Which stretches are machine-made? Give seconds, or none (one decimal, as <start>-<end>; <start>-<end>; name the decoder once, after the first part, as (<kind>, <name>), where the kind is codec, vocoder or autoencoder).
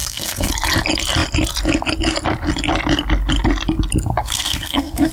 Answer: 0.0-0.5 (codec, SNAC); 4.2-5.1